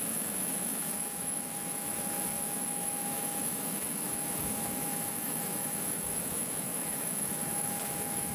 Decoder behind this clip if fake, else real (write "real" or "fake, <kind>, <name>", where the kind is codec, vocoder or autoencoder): fake, autoencoder, DAC-VAE